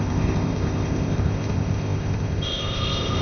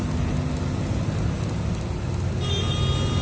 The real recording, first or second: second